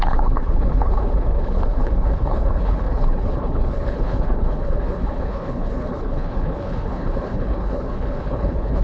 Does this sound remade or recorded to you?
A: remade